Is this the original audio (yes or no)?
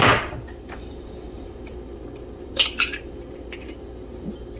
no